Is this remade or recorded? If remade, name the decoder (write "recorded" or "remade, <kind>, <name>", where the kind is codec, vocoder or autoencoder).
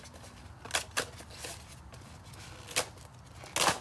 recorded